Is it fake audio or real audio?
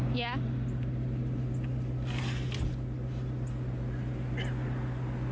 real